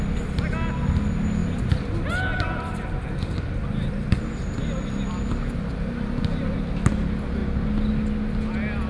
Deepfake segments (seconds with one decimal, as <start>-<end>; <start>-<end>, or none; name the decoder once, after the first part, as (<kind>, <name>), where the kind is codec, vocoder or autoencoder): none